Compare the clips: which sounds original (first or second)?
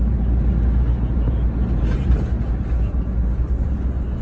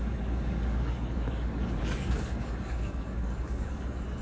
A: first